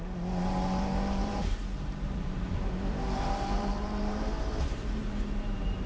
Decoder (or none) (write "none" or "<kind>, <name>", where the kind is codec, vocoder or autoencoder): vocoder, BigVGAN v2